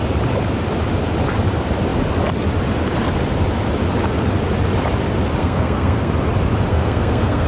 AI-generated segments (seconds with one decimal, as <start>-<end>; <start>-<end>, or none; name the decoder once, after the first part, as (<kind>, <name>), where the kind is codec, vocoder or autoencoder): 5.4-6.1 (codec, SNAC); 6.7-7.5